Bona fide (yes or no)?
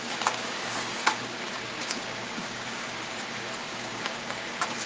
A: no